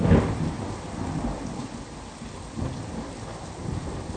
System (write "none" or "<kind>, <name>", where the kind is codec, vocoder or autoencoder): none